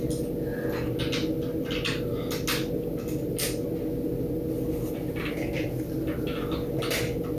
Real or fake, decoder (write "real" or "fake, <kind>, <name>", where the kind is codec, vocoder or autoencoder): real